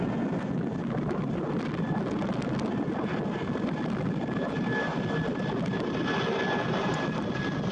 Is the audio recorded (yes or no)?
yes